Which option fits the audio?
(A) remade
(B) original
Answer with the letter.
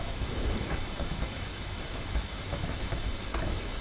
A